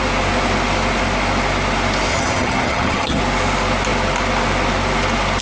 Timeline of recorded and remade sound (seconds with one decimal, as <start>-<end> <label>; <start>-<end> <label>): 0.0-2.1 recorded; 2.1-3.2 remade; 3.2-5.4 recorded